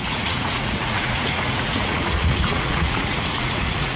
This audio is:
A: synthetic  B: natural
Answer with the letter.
A